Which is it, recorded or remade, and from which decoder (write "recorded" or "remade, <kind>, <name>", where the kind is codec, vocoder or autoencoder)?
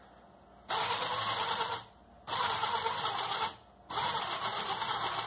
recorded